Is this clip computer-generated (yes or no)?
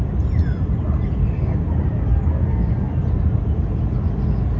no